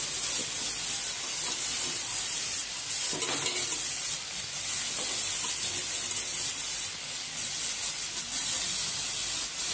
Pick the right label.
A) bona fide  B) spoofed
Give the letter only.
A